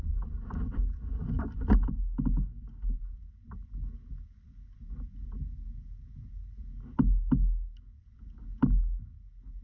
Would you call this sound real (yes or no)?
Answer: yes